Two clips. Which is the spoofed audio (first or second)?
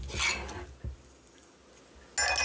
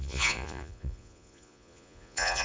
second